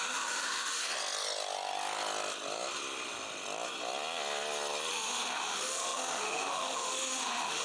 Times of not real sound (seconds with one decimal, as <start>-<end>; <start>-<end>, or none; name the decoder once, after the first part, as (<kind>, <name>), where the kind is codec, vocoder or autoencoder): 0.0-0.9 (autoencoder, DAC-VAE); 4.9-7.6